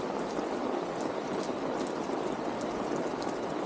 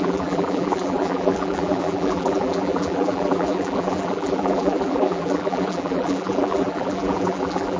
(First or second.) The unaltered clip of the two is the first